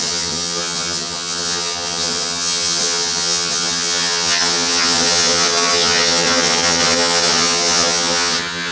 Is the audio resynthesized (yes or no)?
yes